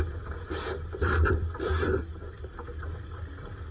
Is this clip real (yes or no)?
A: yes